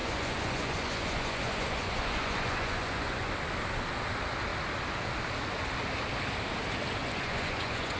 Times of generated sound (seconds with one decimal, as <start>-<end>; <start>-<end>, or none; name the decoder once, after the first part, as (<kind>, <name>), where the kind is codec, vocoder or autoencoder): 0.0-3.3 (vocoder, Vocos); 7.0-8.0